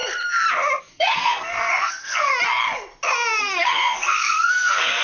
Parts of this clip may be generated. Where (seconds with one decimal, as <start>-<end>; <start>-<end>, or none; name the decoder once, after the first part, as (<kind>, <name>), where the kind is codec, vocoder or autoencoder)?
0.8-2.3 (codec, SNAC); 3.4-5.0